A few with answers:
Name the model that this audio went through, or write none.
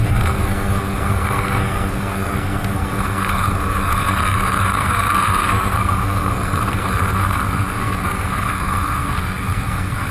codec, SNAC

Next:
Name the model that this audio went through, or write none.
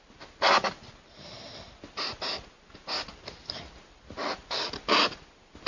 none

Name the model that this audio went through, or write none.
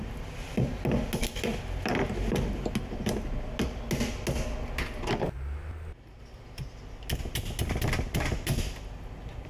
none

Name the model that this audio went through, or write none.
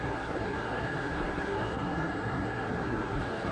codec, SNAC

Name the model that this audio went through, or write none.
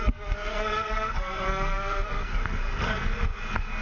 codec, SNAC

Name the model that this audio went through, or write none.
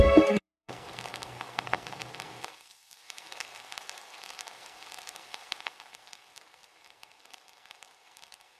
codec, SNAC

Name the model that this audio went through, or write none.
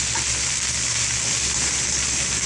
none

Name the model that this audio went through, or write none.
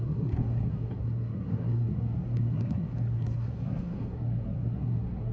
codec, SNAC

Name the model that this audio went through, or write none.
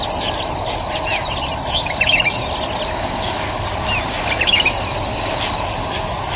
none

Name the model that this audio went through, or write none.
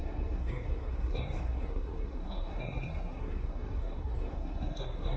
codec, SNAC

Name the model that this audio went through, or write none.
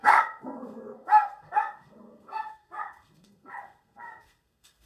codec, SNAC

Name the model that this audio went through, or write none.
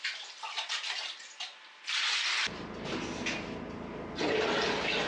none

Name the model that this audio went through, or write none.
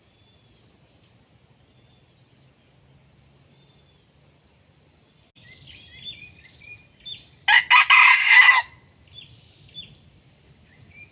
none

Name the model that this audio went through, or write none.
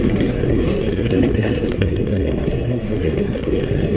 codec, SNAC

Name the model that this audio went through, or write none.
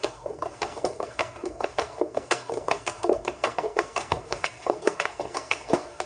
codec, SNAC